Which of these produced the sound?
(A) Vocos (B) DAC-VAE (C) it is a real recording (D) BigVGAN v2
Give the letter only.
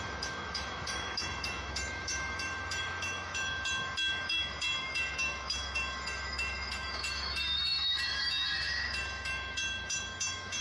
B